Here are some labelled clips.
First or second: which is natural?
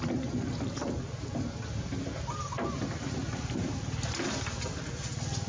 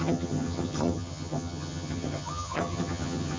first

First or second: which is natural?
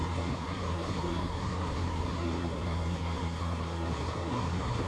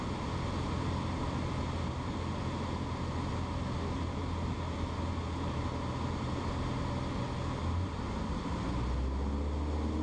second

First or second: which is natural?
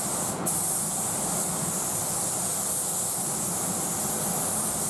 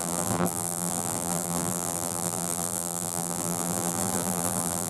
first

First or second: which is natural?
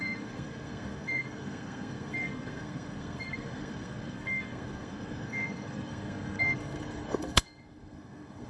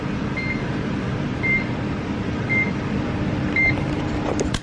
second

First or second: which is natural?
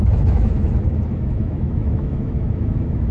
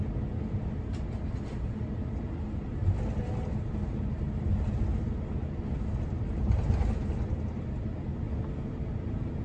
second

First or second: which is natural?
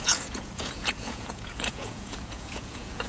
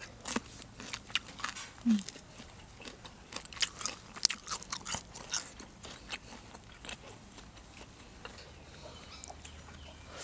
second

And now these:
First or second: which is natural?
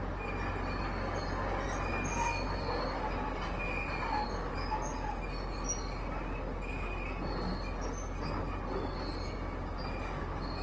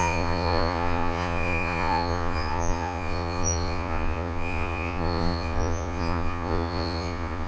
first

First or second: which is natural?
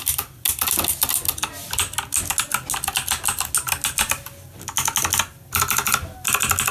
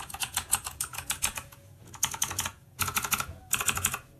first